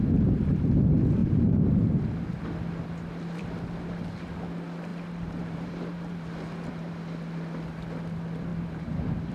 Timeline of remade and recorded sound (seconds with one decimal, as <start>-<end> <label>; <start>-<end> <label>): 0.0-1.2 recorded; 1.2-2.0 remade; 2.0-4.9 recorded; 4.9-6.9 remade; 6.9-8.5 recorded; 8.5-9.3 remade